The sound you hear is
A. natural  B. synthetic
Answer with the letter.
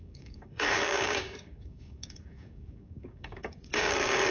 B